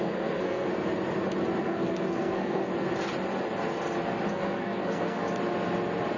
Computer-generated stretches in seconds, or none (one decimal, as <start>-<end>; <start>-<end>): 0.0-0.7; 1.6-2.7; 4.3-5.2